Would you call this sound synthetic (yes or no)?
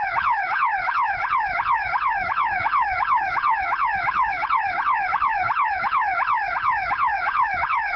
yes